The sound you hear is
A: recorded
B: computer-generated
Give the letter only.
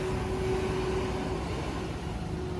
A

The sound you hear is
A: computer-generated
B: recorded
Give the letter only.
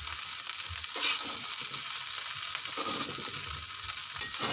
B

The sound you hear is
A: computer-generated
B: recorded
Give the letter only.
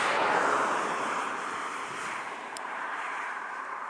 A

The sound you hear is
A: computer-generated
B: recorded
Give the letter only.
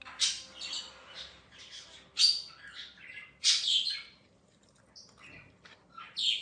B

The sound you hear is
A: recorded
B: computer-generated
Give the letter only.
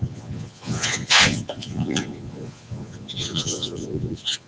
B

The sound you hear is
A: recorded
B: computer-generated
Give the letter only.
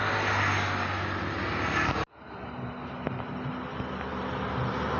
A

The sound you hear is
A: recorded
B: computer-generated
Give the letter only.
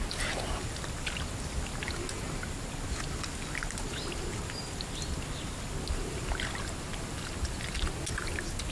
A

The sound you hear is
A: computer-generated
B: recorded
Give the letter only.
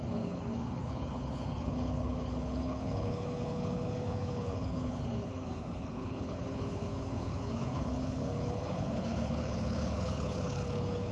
A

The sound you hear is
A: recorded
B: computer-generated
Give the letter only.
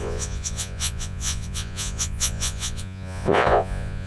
B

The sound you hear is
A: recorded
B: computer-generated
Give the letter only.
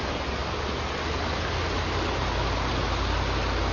A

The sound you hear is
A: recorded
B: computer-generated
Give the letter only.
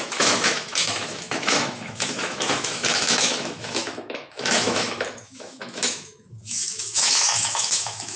B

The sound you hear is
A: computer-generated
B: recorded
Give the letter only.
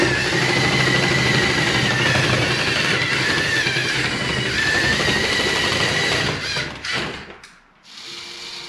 B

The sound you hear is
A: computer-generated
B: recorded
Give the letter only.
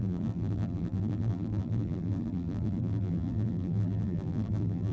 A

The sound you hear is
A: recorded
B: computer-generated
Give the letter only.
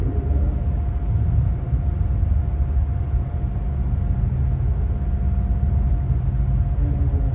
A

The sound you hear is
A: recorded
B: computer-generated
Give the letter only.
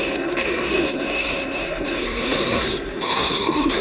B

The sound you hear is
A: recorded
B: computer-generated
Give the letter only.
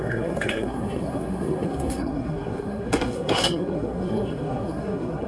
B